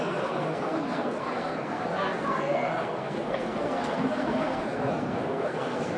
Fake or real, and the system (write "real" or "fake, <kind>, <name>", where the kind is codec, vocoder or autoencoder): fake, codec, SNAC